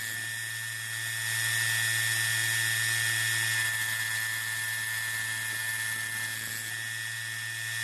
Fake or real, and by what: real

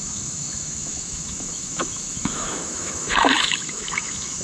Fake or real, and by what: fake, autoencoder, DAC-VAE